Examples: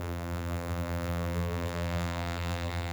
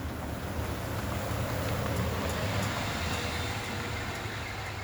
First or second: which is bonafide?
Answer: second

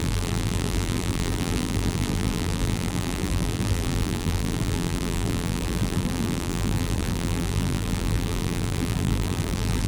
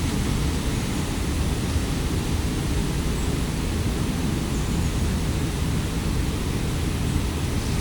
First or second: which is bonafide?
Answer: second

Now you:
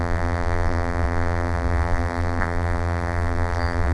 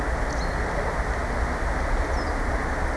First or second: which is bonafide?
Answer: second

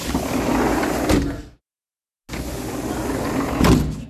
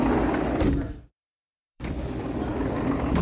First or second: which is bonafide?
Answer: first